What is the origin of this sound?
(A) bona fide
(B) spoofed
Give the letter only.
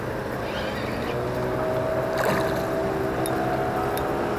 A